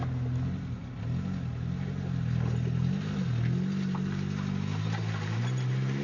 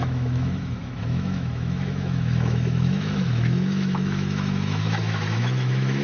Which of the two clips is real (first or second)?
first